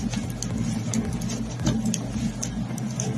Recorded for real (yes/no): yes